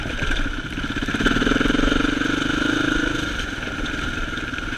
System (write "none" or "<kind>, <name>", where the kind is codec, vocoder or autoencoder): none